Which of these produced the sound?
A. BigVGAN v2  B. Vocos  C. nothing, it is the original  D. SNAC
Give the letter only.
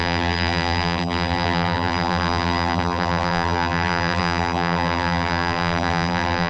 A